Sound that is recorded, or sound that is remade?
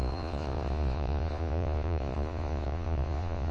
remade